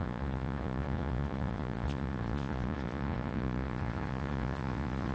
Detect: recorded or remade remade